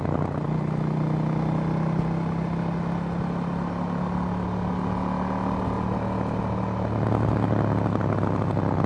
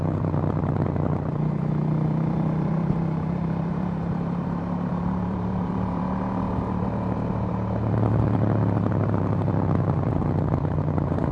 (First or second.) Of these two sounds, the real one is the first